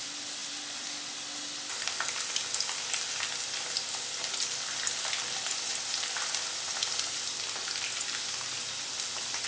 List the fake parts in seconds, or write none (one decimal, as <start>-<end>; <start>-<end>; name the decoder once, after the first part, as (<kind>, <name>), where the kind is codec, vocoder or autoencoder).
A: none